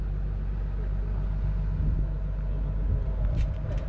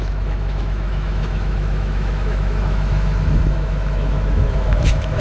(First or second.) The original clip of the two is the first